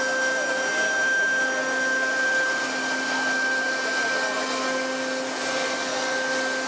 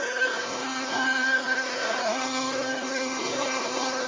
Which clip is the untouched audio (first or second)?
first